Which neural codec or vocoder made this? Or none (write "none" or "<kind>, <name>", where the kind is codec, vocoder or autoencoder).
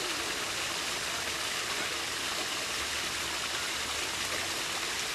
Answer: none